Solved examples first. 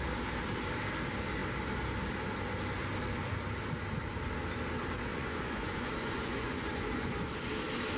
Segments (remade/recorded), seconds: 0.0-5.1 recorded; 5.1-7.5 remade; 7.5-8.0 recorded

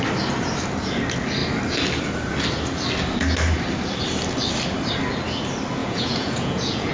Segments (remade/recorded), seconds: 0.0-5.8 recorded; 5.8-6.9 remade

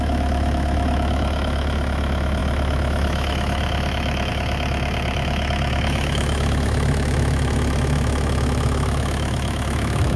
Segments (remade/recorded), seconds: 0.0-10.2 remade

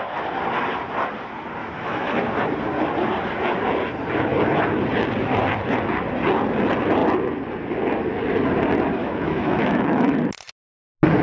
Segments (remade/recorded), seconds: 0.0-1.6 recorded; 1.6-2.2 remade; 2.2-9.0 recorded; 9.0-10.2 remade; 10.2-11.2 recorded